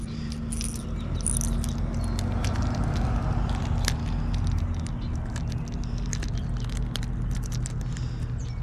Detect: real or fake real